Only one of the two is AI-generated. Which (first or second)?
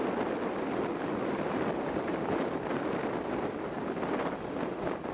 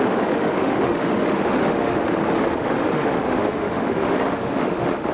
second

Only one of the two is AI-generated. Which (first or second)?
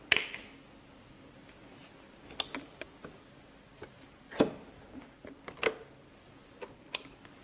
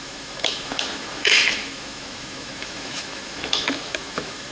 second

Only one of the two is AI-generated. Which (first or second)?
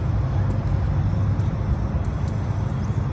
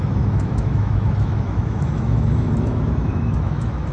second